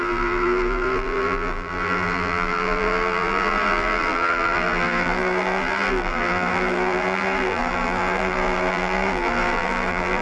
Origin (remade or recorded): remade